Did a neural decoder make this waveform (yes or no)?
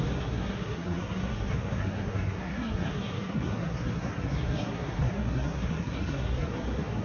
yes